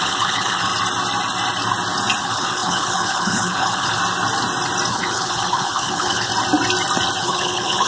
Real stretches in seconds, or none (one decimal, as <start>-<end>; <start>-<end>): 0.7-2.2; 4.0-4.9; 6.3-7.2